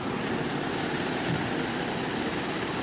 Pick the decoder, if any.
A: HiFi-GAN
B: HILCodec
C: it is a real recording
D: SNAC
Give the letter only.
C